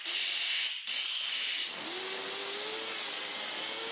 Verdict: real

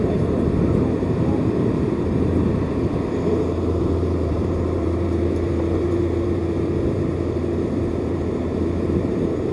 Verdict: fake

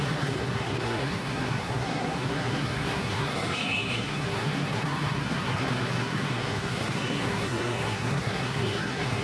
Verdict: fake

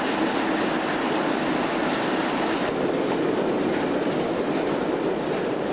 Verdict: real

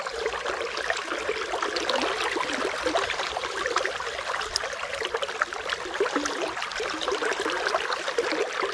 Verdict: real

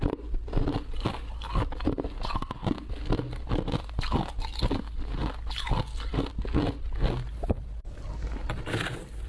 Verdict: real